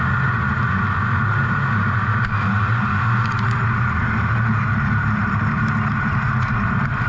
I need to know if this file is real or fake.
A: fake